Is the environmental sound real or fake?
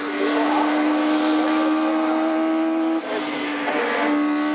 real